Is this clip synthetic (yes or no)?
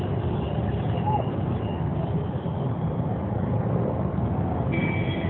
no